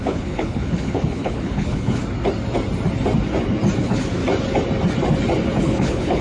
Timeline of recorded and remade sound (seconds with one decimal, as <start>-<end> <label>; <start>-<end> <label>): 0.0-2.0 remade; 2.0-3.8 recorded; 3.8-4.2 remade; 4.2-5.6 recorded; 5.6-6.2 remade